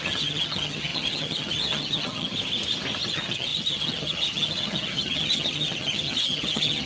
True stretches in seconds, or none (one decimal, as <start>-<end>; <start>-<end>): 2.3-3.1